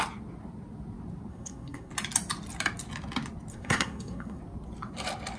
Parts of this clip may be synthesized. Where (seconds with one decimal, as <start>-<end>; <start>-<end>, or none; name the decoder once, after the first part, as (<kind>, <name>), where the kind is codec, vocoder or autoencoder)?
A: 1.3-1.9 (codec, SNAC); 3.5-4.4